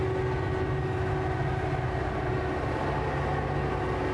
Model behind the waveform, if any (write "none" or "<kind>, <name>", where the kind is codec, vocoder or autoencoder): none